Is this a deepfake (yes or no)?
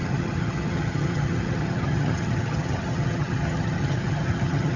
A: yes